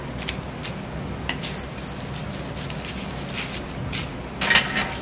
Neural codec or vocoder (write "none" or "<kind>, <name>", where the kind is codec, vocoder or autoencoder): none